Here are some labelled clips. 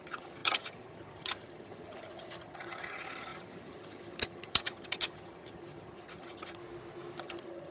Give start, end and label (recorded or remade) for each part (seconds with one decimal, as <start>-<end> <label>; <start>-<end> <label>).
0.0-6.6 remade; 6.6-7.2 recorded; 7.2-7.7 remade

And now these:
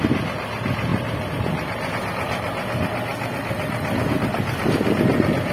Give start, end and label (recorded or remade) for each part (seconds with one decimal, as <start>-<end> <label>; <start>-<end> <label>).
0.0-5.5 recorded

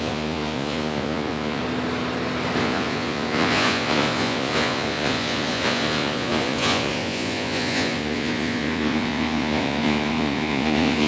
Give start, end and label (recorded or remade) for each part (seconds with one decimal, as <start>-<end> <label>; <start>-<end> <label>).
0.0-1.6 remade; 1.6-2.6 recorded; 2.6-11.1 remade

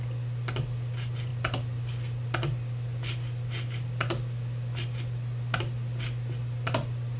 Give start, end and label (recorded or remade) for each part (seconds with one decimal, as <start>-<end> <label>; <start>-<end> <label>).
0.0-7.2 recorded

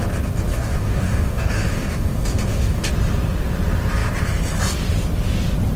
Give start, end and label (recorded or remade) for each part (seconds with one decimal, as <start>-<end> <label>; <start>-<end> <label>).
0.0-0.5 recorded; 0.5-2.9 remade; 2.9-5.8 recorded